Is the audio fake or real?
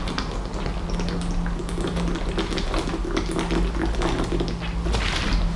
real